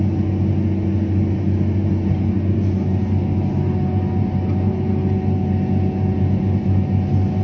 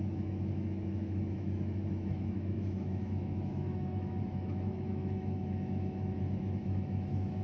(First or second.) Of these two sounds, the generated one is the second